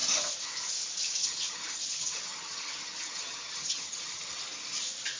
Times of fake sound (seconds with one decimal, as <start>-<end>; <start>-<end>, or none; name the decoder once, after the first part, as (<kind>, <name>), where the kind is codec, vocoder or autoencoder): 1.2-4.3 (vocoder, HiFi-GAN)